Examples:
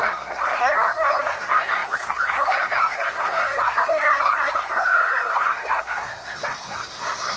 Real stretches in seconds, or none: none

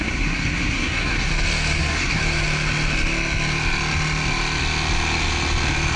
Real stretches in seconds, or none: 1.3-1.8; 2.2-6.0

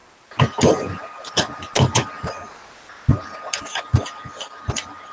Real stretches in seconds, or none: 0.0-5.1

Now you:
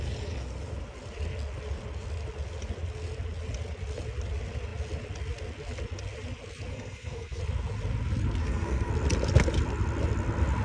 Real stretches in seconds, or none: 0.0-6.7; 7.4-8.4; 8.9-10.6

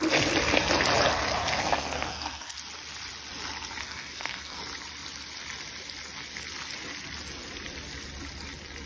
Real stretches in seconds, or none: 0.0-1.4; 2.6-3.8; 4.6-8.9